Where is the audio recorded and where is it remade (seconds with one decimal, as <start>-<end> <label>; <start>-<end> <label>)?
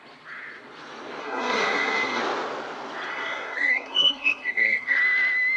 0.0-1.2 recorded; 1.2-2.2 remade; 2.2-3.1 recorded; 3.1-5.0 remade; 5.0-5.6 recorded